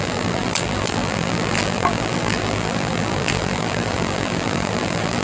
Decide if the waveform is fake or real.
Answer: fake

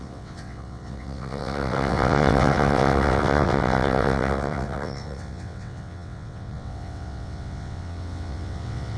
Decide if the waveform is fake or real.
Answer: fake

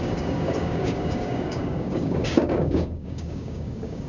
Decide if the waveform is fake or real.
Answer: fake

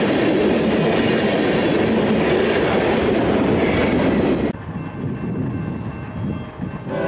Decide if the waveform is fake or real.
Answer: real